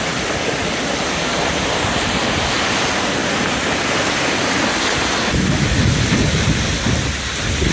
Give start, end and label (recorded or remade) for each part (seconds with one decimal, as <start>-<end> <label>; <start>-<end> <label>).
0.0-0.6 recorded; 0.6-2.1 remade; 2.1-3.2 recorded; 3.2-5.4 remade; 5.4-7.7 recorded